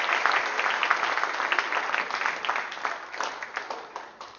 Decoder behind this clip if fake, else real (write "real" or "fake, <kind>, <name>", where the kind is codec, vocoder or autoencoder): real